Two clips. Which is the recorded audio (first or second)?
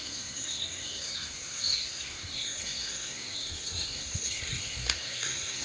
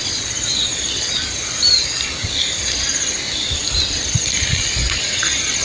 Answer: second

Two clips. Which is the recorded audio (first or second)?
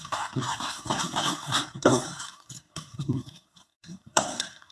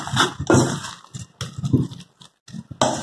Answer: second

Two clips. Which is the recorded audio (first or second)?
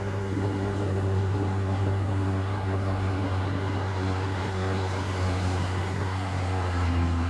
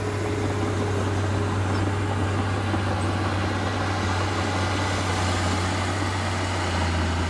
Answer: second